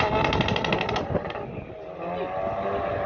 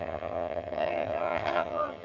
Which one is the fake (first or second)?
second